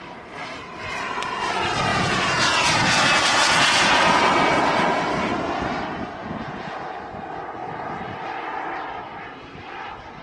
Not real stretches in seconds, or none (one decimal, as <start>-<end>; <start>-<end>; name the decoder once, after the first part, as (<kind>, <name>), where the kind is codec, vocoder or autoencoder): 1.9-4.3 (vocoder, Vocos); 6.2-6.9